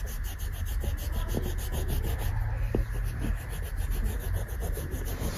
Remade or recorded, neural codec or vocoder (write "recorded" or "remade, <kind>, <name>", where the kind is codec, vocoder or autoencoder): recorded